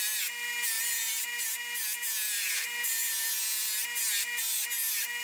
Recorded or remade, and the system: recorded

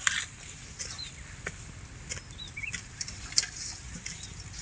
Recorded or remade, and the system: recorded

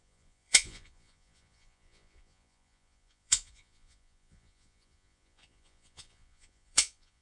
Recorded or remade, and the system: remade, vocoder, Vocos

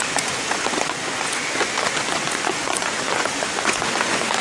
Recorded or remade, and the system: remade, vocoder, Vocos